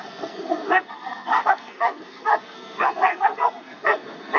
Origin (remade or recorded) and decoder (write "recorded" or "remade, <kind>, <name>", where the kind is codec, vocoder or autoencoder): remade, codec, SNAC